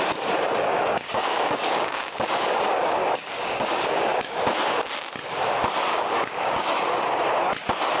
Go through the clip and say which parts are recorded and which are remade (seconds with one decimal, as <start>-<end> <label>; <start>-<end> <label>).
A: 0.0-0.5 recorded; 0.5-4.4 remade; 4.4-5.9 recorded; 5.9-7.2 remade; 7.2-8.0 recorded